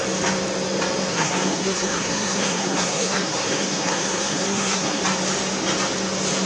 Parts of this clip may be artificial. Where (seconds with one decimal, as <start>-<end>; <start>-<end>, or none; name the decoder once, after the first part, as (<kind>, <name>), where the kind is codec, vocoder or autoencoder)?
1.1-5.0 (codec, SNAC)